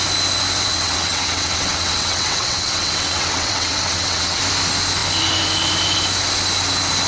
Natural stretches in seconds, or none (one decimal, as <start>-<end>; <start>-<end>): 0.0-0.7; 4.4-7.1